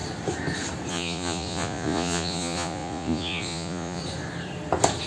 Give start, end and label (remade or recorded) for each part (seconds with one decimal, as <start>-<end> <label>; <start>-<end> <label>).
0.0-0.9 recorded; 0.9-4.0 remade; 4.0-5.1 recorded